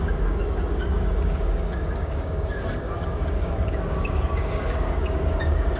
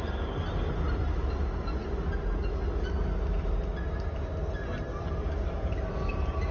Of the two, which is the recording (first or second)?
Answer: second